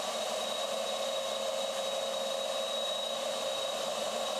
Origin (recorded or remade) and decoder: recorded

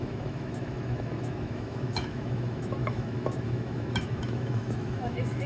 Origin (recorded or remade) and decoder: remade, autoencoder, DAC-VAE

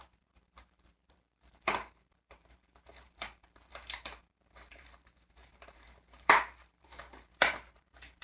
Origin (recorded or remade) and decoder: remade, vocoder, BigVGAN v2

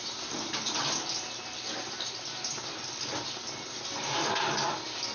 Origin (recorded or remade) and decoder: remade, vocoder, BigVGAN v2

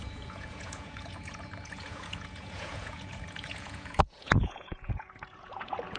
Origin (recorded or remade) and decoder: remade, vocoder, Vocos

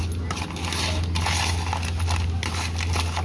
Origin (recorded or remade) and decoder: recorded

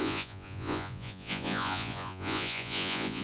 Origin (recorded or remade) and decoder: remade, vocoder, Vocos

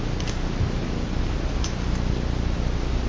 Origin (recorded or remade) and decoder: recorded